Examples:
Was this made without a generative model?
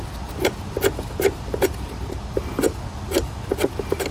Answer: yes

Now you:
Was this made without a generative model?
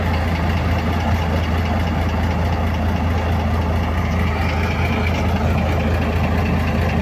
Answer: yes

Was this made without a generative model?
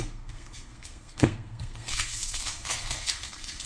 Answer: no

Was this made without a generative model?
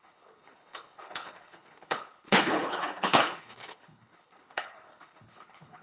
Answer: no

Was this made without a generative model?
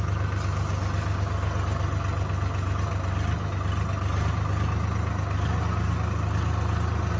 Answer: yes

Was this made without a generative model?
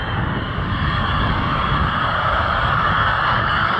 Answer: no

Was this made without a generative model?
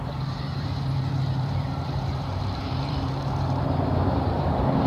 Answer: no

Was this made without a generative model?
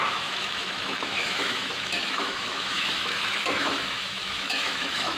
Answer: no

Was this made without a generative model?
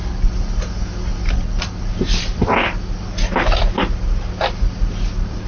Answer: yes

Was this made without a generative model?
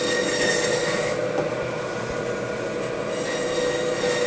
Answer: yes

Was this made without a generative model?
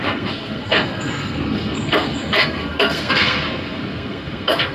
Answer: no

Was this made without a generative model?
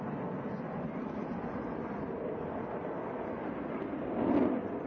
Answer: yes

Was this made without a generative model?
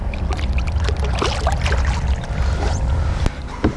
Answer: yes